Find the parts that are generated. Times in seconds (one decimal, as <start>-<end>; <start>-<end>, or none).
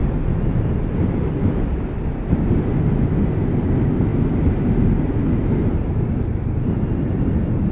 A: none